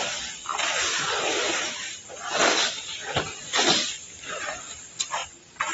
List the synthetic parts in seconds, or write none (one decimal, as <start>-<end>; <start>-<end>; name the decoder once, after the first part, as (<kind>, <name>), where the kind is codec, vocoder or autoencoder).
0.0-5.7 (vocoder, BigVGAN v2)